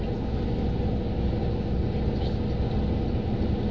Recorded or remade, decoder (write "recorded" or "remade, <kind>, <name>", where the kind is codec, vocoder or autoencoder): recorded